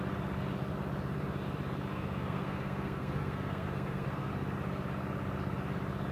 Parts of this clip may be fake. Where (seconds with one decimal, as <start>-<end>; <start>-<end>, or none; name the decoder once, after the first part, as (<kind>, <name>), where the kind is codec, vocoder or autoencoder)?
1.9-4.3 (codec, SNAC)